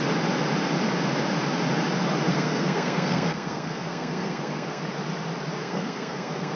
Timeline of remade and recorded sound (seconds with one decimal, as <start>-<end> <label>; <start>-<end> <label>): 0.0-2.3 recorded; 2.3-4.8 remade; 4.8-5.6 recorded; 5.6-6.6 remade